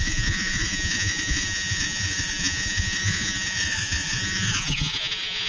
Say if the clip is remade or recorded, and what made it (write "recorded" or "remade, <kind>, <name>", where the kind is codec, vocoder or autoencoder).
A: remade, vocoder, Vocos